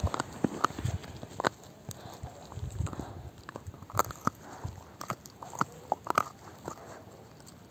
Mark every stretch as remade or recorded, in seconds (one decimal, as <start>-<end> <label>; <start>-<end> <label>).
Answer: 0.0-7.7 recorded